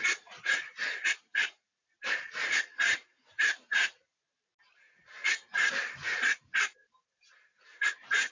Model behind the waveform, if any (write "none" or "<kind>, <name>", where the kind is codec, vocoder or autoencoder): vocoder, BigVGAN v2